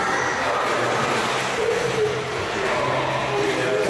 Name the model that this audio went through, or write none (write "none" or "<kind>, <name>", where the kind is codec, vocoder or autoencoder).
none